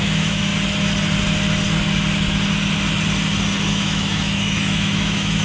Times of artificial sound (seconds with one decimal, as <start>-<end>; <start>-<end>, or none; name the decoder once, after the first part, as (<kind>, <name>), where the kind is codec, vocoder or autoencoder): 0.0-0.5 (autoencoder, DAC-VAE); 3.7-5.4